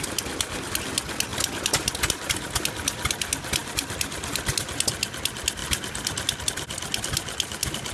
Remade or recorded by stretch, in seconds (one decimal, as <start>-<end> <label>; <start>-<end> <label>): 0.0-3.6 recorded; 3.6-4.5 remade; 4.5-5.6 recorded; 5.6-6.4 remade; 6.4-7.9 recorded

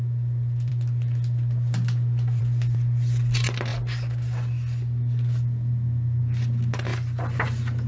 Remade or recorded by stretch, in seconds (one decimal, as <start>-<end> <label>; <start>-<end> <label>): 0.0-6.9 recorded; 6.9-7.9 remade